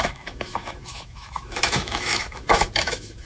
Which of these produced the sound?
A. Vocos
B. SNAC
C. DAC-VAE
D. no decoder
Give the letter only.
C